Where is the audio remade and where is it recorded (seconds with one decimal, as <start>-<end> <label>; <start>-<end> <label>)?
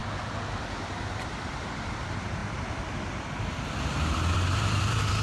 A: 0.0-2.0 recorded; 2.0-2.4 remade; 2.4-3.4 recorded; 3.4-5.2 remade